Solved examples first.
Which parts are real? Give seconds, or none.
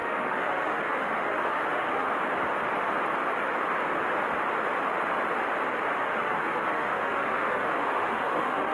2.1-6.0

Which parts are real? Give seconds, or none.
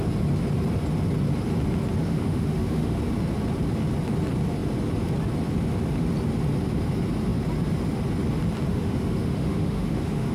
0.0-2.0; 3.0-8.7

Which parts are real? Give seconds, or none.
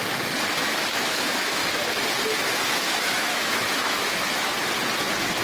0.0-0.6; 1.6-2.4; 4.5-5.4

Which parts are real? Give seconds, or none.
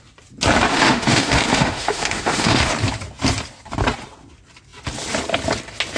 0.0-0.7; 2.7-6.0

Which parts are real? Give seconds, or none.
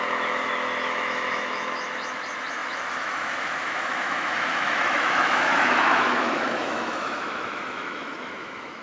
none